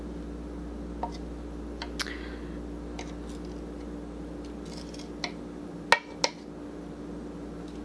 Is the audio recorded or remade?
recorded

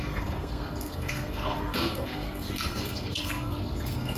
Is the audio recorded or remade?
remade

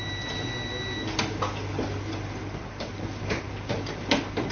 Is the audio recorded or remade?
recorded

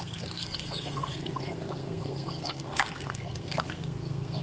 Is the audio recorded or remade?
remade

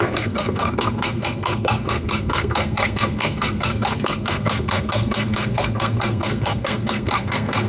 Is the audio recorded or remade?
remade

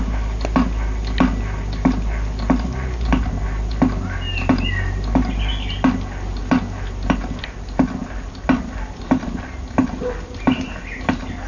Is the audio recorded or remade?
recorded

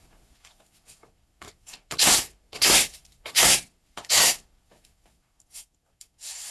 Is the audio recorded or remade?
remade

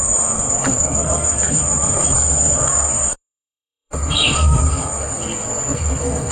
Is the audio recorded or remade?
remade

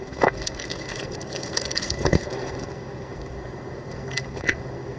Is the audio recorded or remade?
remade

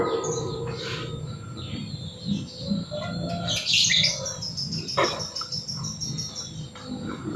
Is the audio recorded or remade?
recorded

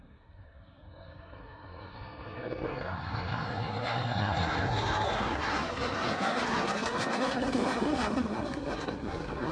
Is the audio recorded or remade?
remade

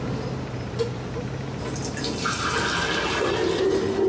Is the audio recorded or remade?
recorded